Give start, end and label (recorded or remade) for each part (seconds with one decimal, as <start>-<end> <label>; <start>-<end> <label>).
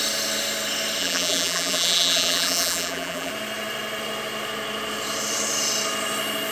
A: 0.0-1.0 recorded; 1.0-3.3 remade; 3.3-6.5 recorded